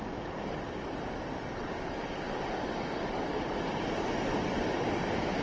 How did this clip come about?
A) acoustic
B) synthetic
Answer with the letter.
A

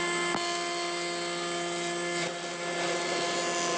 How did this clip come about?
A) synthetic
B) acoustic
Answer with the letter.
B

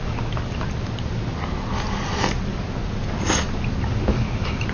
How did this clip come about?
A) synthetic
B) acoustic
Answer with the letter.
B